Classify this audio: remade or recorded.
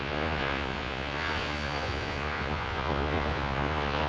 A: remade